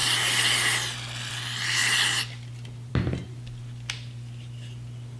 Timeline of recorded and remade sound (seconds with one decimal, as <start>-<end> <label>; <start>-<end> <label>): 0.0-5.2 recorded